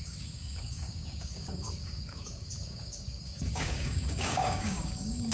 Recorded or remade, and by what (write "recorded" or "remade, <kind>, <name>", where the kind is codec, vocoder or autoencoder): remade, codec, DAC